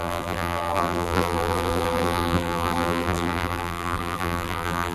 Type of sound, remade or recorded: remade